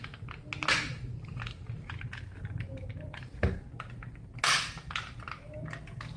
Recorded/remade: recorded